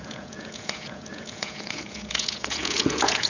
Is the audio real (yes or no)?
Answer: no